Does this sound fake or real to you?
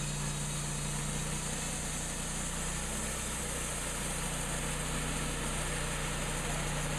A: real